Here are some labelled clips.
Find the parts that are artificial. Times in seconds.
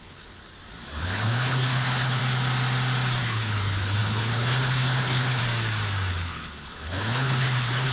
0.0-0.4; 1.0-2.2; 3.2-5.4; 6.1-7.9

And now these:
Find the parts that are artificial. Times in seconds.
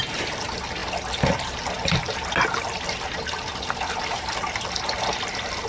none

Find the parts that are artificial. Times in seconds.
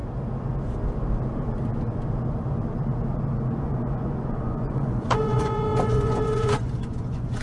3.6-7.4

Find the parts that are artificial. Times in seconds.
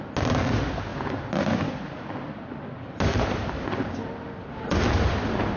none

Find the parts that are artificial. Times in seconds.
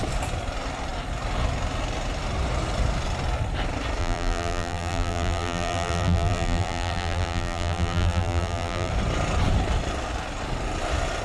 4.0-8.9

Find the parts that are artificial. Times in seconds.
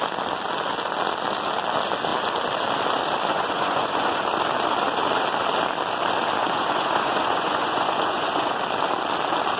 3.3-4.2; 6.4-8.6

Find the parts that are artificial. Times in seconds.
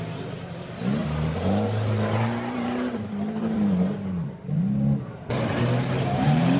0.0-6.6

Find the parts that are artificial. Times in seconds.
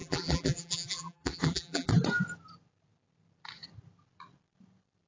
0.0-1.9